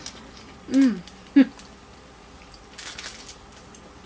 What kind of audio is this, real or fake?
real